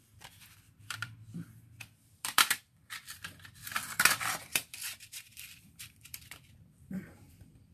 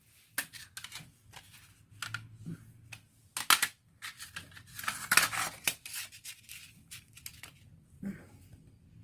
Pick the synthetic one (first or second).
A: first